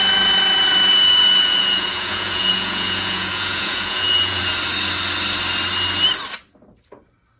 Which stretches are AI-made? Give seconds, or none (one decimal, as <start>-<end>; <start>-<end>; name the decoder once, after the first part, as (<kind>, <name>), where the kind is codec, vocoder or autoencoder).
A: 0.9-4.4 (vocoder, Vocos)